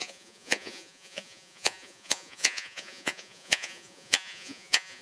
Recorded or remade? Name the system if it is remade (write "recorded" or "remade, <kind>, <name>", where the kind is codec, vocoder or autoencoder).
remade, vocoder, Vocos